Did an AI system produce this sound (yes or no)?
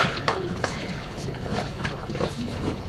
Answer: yes